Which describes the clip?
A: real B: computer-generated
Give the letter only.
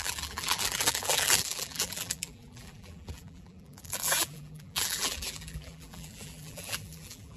B